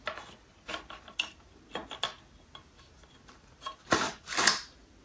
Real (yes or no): yes